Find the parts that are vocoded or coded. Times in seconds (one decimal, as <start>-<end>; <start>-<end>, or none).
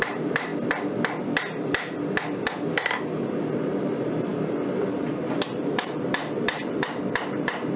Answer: 0.0-0.5; 3.0-7.8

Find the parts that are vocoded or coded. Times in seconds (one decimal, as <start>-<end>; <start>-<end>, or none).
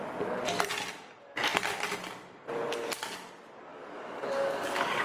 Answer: 3.7-5.0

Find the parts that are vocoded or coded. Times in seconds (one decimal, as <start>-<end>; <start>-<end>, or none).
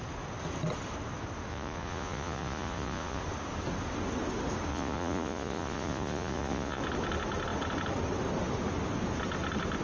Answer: 1.5-3.2; 4.7-6.8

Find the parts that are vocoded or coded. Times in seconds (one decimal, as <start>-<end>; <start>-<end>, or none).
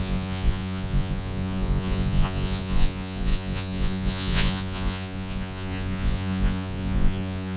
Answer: 0.0-7.6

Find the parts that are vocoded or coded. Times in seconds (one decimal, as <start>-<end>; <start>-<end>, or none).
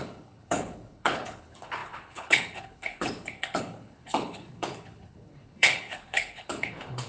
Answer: 0.0-7.1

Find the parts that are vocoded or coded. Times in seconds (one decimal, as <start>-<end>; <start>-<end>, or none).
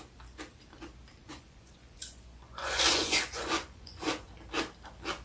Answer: 1.2-4.3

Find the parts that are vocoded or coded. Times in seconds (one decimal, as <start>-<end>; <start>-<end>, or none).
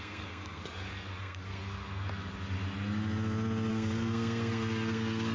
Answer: 0.0-0.6; 1.2-1.6; 3.7-5.3